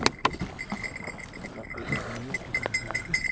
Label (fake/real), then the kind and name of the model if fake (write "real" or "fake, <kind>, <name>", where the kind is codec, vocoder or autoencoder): real